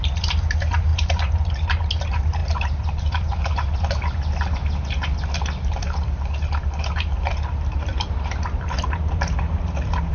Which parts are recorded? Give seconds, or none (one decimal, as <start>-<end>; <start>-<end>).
0.0-2.4; 3.0-5.8